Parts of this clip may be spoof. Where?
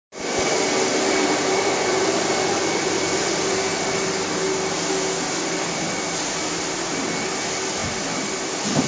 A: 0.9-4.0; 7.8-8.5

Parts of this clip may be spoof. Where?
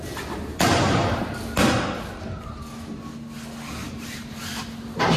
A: 0.5-1.2; 3.8-4.5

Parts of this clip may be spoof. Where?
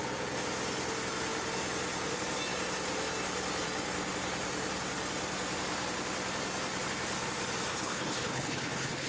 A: 7.7-9.1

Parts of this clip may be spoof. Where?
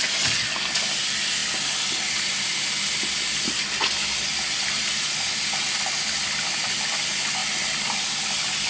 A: none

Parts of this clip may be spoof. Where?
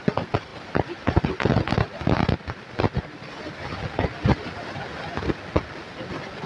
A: none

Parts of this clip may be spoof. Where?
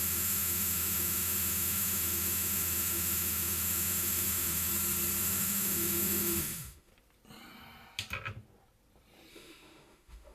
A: 0.0-4.7; 5.2-6.9; 9.3-10.3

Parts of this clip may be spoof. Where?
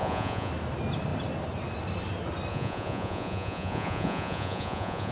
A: 0.0-0.5; 2.5-5.1